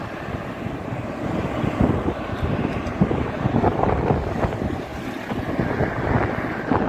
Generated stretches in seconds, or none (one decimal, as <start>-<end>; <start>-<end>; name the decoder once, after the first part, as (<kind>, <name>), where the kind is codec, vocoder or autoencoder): 0.0-6.9 (vocoder, BigVGAN v2)